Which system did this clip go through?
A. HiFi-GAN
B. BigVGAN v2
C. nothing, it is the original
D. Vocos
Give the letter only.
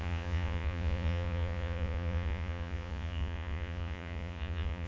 D